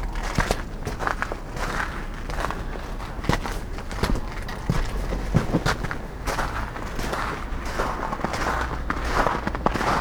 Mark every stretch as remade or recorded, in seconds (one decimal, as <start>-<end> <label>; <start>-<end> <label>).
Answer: 0.0-10.0 recorded